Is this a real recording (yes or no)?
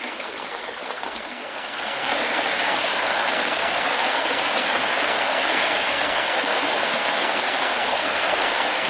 no